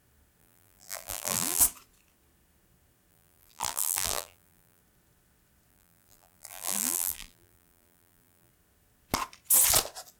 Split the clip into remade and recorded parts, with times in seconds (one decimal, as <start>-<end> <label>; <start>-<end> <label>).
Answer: 0.0-0.4 recorded; 0.4-1.6 remade; 1.6-3.1 recorded; 3.1-4.8 remade; 4.8-5.7 recorded; 5.7-8.5 remade; 8.5-10.2 recorded